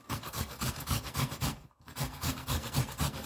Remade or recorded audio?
remade